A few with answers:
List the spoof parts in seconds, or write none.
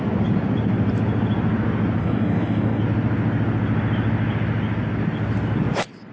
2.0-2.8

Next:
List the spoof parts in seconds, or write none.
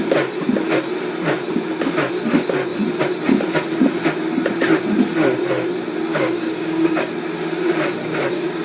6.1-7.1